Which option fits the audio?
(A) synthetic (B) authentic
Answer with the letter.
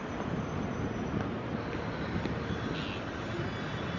B